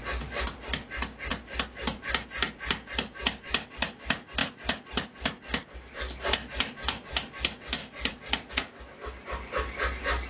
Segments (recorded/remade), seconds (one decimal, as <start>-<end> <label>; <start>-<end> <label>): 0.0-7.8 recorded; 7.8-8.5 remade; 8.5-10.3 recorded